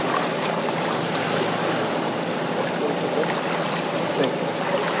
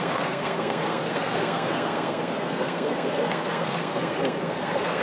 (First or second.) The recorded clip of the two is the first